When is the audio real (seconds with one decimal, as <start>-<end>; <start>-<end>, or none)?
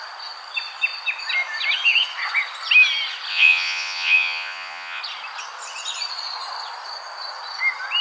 0.0-3.3; 5.0-8.0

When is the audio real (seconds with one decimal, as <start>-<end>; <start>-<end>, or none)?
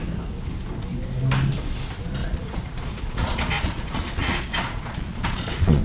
0.0-2.2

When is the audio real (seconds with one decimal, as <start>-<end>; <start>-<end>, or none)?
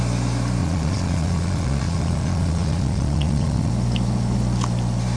0.0-0.6; 3.7-5.2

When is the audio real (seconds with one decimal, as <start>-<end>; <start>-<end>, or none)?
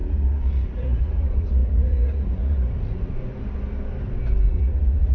3.2-4.5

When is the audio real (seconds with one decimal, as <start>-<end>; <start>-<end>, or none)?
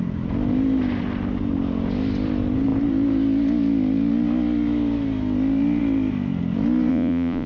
0.0-6.9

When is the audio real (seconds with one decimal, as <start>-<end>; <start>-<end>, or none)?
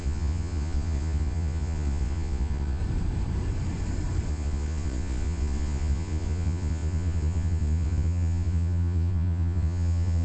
2.8-4.3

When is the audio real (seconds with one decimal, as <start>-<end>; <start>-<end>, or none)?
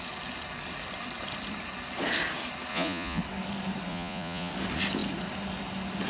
0.0-2.7; 3.2-3.9; 4.5-6.1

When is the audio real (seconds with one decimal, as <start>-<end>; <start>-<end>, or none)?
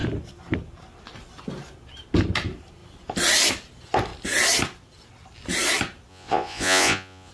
0.0-6.1